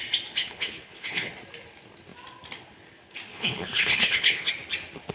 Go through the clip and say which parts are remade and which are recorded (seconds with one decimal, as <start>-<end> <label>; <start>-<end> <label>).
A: 0.0-0.4 recorded; 0.4-1.3 remade; 1.3-3.3 recorded; 3.3-4.5 remade; 4.5-5.1 recorded